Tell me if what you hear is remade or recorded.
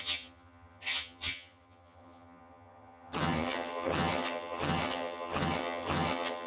remade